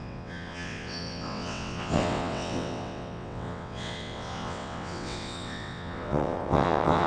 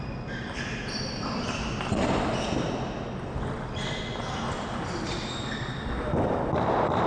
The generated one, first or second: first